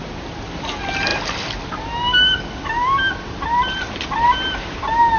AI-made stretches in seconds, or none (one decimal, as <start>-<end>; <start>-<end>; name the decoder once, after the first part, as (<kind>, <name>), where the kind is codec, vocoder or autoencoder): none